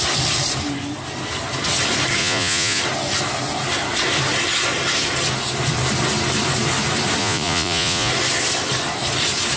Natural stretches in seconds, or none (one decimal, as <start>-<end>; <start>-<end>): 0.0-2.2; 2.8-7.2; 8.1-9.6